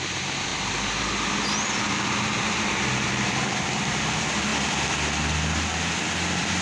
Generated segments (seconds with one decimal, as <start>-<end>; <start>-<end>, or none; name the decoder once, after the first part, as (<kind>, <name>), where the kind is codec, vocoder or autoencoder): none